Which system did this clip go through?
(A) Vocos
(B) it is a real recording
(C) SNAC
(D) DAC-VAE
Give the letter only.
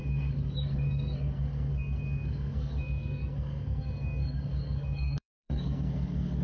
C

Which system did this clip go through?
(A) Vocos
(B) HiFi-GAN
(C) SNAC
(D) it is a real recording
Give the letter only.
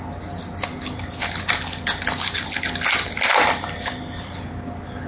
D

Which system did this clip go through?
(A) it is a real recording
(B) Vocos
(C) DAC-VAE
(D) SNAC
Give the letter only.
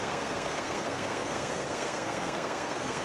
D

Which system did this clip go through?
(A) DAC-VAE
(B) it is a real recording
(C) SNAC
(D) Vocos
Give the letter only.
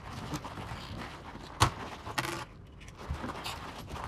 B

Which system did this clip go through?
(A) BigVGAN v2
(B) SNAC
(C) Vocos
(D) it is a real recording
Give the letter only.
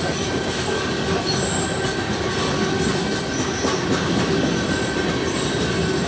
D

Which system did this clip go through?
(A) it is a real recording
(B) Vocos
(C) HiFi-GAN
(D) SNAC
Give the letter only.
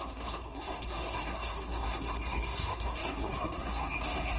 D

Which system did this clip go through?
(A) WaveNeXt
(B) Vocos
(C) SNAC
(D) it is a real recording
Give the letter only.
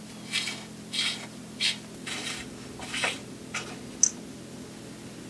D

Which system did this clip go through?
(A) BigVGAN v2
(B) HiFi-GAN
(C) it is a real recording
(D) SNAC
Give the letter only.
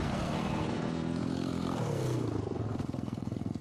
D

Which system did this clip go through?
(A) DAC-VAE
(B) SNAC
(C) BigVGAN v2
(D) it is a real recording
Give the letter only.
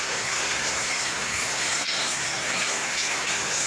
B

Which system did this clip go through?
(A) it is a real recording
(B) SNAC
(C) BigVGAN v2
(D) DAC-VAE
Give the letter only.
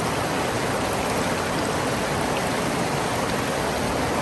A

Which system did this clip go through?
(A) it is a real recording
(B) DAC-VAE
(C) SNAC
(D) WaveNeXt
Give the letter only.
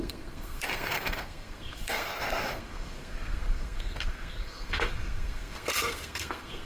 C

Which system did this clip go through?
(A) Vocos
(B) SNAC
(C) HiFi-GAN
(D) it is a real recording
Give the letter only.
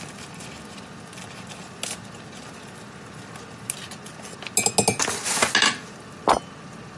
D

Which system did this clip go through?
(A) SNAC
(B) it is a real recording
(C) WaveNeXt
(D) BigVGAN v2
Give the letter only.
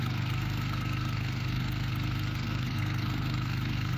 A